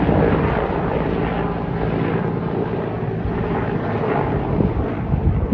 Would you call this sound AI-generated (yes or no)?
no